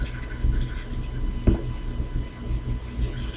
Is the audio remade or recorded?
recorded